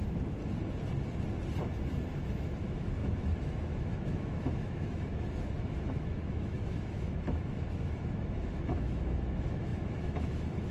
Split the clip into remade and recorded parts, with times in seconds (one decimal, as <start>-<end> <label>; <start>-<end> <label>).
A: 0.0-0.4 remade; 0.4-2.1 recorded; 2.1-10.7 remade

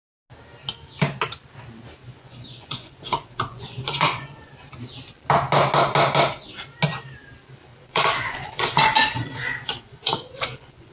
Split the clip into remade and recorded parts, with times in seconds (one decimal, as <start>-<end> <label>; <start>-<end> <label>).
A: 0.0-2.0 recorded; 2.0-4.5 remade; 4.5-7.7 recorded; 7.7-10.9 remade

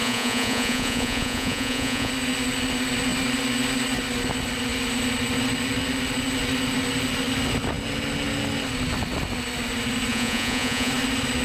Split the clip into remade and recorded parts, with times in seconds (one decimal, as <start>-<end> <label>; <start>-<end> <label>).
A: 0.0-2.1 remade; 2.1-10.1 recorded; 10.1-10.9 remade; 10.9-11.4 recorded